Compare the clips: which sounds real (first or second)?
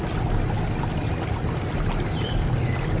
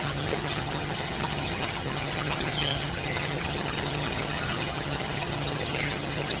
first